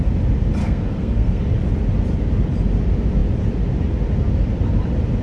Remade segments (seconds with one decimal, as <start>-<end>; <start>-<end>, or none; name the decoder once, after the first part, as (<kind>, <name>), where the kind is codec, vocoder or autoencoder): 0.6-1.4 (codec, SNAC)

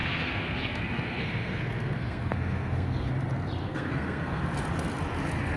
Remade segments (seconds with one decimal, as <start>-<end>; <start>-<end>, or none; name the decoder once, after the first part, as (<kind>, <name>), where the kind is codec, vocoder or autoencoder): 0.0-3.1 (codec, SNAC); 3.6-4.4

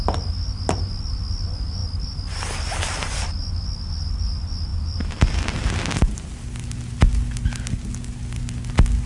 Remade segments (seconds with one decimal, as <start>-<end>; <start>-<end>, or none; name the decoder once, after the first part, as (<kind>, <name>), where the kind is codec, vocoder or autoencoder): none

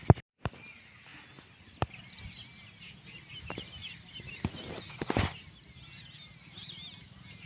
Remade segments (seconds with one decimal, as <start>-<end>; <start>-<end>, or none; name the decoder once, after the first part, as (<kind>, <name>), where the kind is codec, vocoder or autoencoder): none